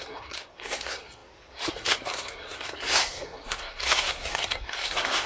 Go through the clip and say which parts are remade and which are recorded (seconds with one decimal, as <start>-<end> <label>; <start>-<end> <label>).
0.0-5.3 remade